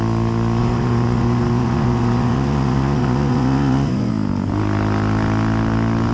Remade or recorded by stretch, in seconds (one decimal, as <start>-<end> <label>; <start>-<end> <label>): 0.0-0.6 recorded; 0.6-4.1 remade; 4.1-6.1 recorded